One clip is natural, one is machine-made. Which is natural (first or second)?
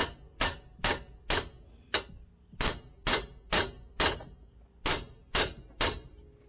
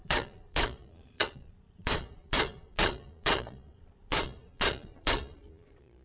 first